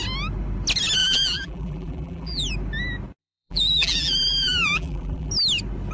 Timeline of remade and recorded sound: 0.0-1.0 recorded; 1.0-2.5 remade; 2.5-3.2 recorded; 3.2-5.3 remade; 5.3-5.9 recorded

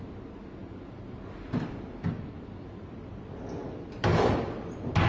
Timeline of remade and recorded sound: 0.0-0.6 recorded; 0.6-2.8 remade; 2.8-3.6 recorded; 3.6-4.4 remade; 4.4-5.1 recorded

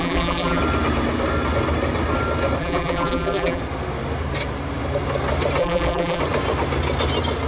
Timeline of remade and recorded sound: 0.0-0.6 remade; 0.6-2.6 recorded; 2.6-3.6 remade; 3.6-5.6 recorded; 5.6-6.2 remade; 6.2-7.5 recorded